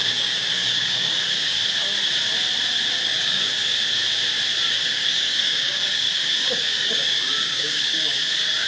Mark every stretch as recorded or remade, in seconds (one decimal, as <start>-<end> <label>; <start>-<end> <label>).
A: 0.0-1.6 remade; 1.6-3.0 recorded; 3.0-4.0 remade; 4.0-4.7 recorded; 4.7-8.7 remade